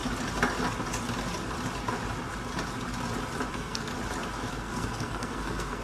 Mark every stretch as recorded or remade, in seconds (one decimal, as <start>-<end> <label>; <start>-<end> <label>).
0.0-3.5 recorded; 3.5-3.9 remade; 3.9-4.5 recorded; 4.5-5.8 remade